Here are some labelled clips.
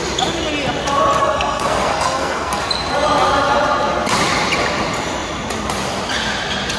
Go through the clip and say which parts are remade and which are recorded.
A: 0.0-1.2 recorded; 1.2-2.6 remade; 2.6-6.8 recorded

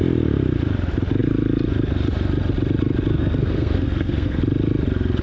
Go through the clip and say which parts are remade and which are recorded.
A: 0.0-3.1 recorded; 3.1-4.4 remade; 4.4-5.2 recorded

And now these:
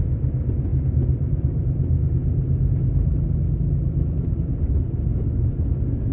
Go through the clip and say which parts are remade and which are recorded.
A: 0.0-6.1 recorded